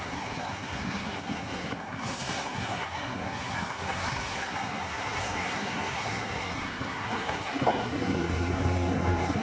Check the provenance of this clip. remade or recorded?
remade